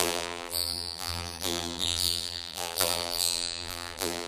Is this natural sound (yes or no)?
no